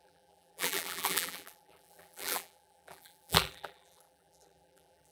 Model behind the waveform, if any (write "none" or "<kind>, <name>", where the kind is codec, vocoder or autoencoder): vocoder, BigVGAN v2